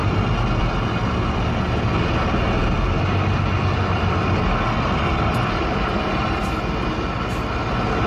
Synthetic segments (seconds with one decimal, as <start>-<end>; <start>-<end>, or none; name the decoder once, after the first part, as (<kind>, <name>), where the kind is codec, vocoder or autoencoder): 2.6-6.5 (vocoder, BigVGAN v2)